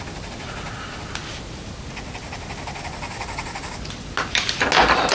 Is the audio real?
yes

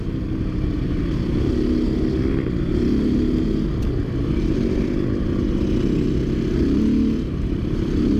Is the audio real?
yes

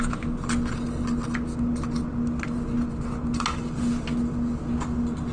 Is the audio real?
yes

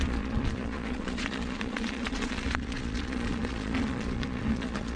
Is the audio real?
no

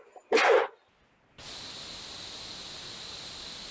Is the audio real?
yes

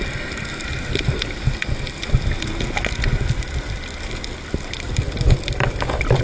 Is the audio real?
yes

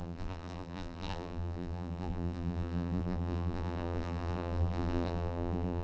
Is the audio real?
no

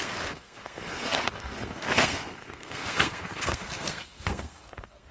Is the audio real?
no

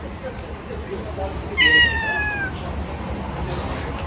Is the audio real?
yes